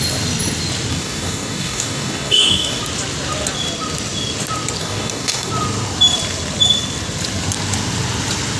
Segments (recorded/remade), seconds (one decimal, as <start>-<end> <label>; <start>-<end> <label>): 0.0-0.9 recorded; 0.9-2.8 remade; 2.8-4.8 recorded; 4.8-5.5 remade; 5.5-8.6 recorded